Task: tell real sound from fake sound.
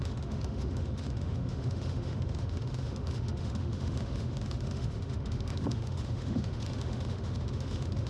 fake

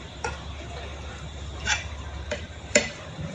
fake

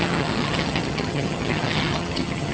fake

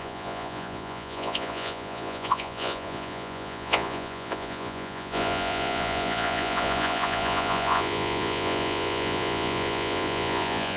fake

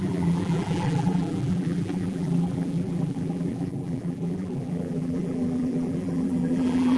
fake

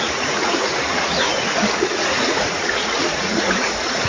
fake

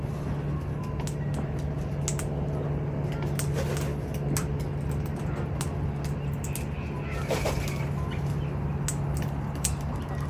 real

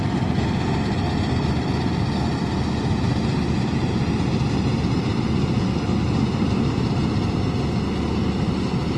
real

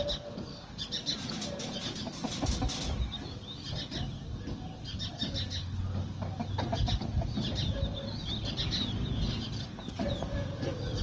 real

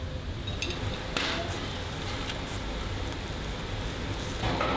real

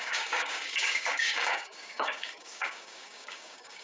fake